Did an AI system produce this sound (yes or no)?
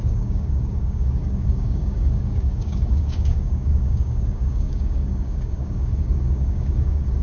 yes